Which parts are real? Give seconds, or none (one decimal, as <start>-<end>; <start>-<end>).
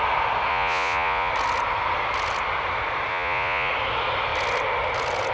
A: 0.0-0.5; 1.3-3.1; 3.7-5.3